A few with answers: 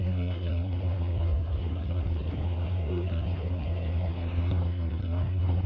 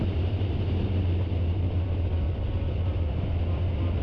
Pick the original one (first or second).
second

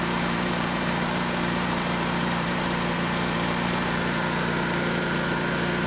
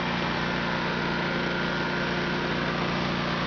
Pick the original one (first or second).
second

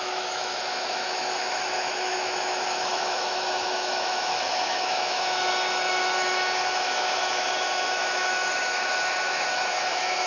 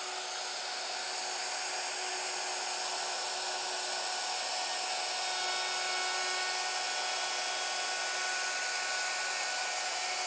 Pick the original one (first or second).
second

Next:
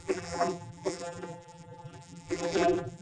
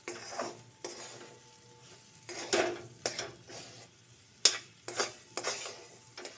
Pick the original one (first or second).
second